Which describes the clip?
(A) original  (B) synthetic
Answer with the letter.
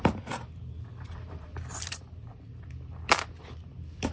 A